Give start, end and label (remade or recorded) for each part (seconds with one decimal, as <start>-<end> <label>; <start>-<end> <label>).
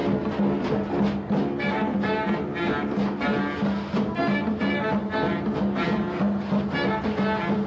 0.0-7.7 recorded